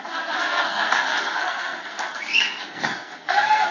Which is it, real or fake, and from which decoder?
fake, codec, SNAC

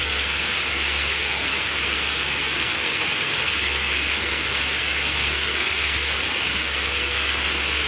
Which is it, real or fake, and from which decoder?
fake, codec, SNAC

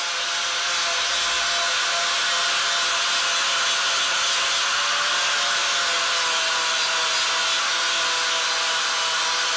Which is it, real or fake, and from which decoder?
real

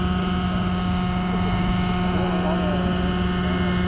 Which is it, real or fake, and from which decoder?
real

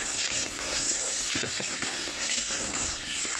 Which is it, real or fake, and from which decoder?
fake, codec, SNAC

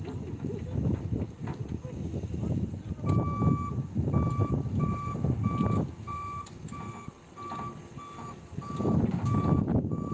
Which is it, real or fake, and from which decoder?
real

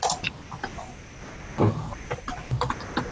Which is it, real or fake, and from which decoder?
real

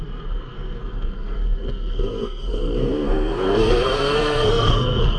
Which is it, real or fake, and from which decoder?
fake, codec, SNAC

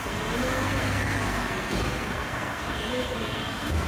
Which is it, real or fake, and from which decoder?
fake, codec, SNAC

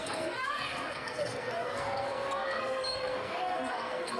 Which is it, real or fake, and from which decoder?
fake, codec, SNAC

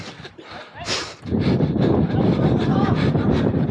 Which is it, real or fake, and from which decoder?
real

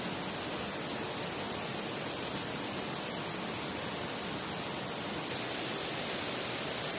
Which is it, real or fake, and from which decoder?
real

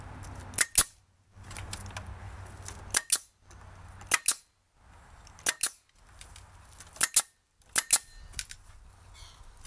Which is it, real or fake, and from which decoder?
real